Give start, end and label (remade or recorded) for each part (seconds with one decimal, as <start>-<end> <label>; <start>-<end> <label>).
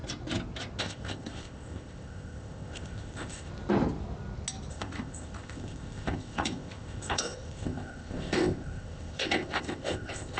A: 0.0-0.8 recorded; 0.8-3.5 remade; 3.5-4.7 recorded; 4.7-10.4 remade